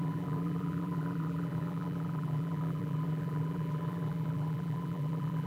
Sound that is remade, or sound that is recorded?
remade